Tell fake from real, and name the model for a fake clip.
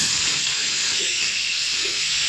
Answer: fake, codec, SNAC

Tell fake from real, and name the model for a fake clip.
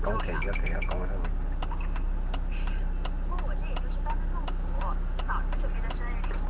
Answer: real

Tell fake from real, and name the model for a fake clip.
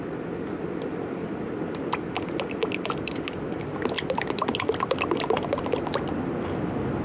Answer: real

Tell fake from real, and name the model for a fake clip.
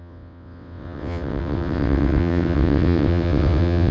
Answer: fake, vocoder, WaveNeXt